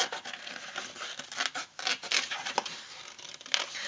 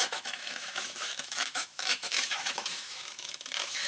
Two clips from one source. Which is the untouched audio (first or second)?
first